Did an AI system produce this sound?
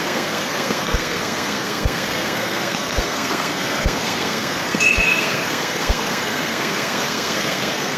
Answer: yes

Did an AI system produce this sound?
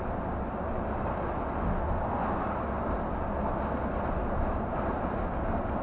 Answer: no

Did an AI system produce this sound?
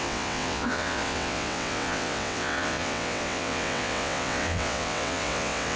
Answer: yes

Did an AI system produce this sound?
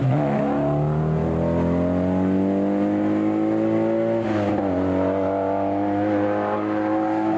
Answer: no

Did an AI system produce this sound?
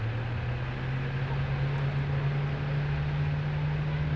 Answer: no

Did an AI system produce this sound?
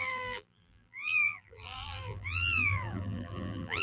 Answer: yes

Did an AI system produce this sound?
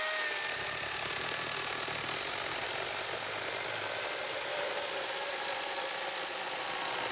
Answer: no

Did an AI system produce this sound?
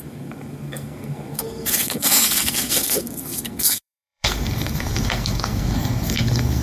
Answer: yes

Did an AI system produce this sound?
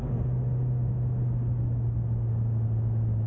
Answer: no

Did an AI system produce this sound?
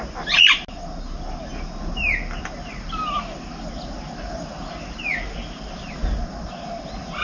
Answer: no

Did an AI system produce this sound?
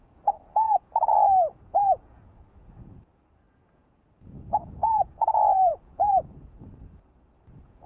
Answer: yes